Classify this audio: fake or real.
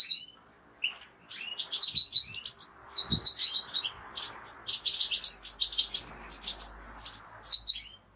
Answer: real